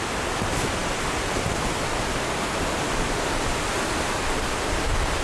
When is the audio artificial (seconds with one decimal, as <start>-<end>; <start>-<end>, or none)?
none